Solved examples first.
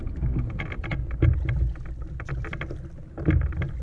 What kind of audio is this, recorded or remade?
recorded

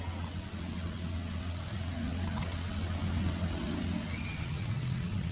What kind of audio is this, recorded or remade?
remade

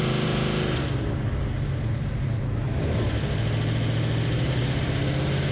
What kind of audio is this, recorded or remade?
recorded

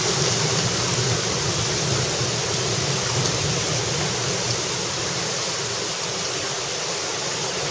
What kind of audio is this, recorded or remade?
recorded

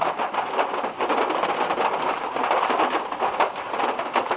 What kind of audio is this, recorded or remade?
recorded